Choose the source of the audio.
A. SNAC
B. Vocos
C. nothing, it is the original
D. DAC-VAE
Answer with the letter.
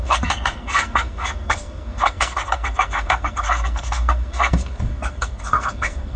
A